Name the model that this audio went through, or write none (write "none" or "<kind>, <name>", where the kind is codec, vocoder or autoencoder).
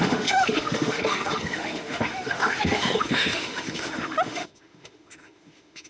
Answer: autoencoder, DAC-VAE